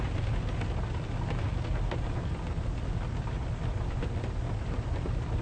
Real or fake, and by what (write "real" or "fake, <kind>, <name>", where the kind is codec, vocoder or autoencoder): real